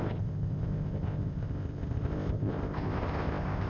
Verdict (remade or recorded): remade